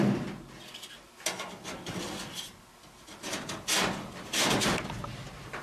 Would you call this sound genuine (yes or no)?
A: yes